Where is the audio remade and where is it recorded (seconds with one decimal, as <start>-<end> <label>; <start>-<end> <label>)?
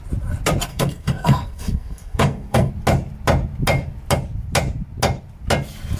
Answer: 0.0-0.7 recorded; 0.7-2.7 remade; 2.7-6.0 recorded